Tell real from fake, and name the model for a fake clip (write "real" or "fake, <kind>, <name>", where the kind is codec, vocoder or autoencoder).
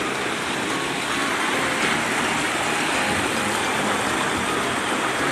real